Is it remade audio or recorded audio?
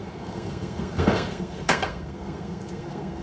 remade